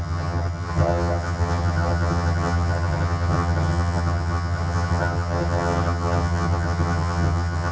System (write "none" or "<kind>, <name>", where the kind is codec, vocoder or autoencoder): vocoder, HiFi-GAN